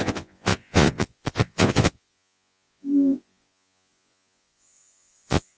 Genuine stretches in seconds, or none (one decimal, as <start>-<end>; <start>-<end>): none